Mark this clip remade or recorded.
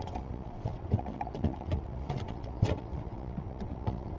remade